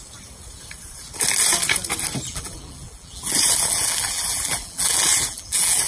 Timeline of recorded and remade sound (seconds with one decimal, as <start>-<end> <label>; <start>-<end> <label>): 0.0-2.3 recorded; 2.3-5.9 remade